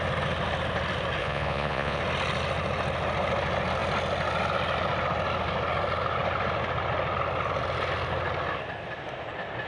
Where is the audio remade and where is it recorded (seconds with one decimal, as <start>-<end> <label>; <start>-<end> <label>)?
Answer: 0.0-1.2 recorded; 1.2-2.0 remade; 2.0-9.7 recorded